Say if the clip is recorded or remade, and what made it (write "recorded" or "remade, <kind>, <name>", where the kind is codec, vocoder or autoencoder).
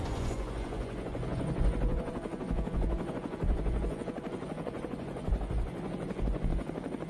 remade, vocoder, Vocos